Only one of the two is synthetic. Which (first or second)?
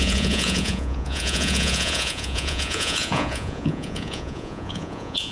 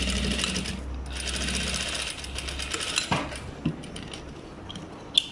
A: first